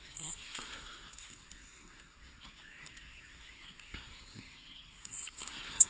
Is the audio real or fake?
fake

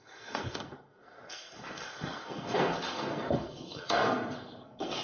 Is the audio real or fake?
fake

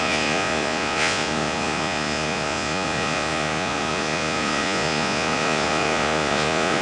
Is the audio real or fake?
fake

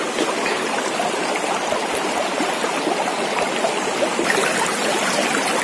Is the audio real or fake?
real